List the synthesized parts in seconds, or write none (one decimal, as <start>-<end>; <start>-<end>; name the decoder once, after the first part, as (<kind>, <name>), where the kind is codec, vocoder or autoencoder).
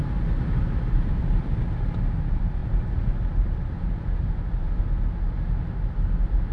2.6-4.8 (vocoder, BigVGAN v2)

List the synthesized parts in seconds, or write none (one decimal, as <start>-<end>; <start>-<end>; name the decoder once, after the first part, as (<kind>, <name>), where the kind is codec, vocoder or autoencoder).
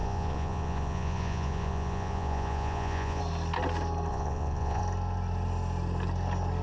0.0-3.2 (vocoder, Vocos); 4.1-4.8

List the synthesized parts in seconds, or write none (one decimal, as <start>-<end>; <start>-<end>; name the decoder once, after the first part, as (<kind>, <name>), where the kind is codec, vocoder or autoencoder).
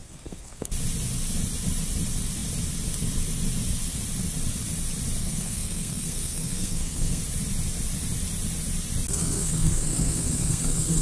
0.0-0.7 (codec, SNAC); 5.2-7.2; 9.1-11.0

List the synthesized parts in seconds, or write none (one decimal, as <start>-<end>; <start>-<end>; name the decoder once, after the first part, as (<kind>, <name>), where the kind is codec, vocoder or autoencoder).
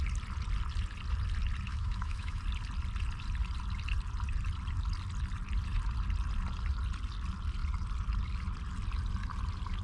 1.7-2.4 (autoencoder, DAC-VAE)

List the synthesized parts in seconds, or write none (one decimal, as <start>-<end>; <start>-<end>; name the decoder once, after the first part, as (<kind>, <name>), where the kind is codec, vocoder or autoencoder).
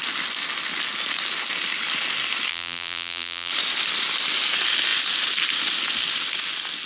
2.5-3.5 (vocoder, BigVGAN v2)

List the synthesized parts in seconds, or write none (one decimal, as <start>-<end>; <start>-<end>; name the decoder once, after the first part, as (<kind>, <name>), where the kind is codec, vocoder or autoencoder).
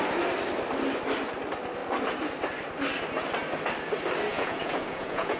4.3-5.4 (vocoder, Vocos)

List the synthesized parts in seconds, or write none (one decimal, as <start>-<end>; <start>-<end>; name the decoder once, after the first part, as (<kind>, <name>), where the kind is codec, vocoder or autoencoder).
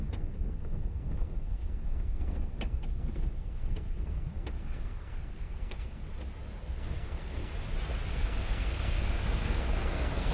0.0-6.0 (codec, SNAC); 6.6-7.5; 8.1-10.3